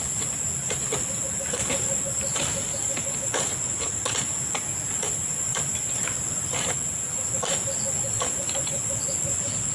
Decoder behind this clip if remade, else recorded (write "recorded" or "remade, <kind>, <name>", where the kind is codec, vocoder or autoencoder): recorded